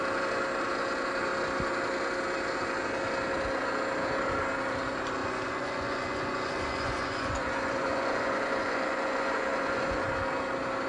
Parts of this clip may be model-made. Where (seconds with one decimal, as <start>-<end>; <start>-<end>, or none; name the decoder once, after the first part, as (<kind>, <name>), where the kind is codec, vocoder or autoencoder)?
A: 5.2-10.1 (vocoder, Vocos)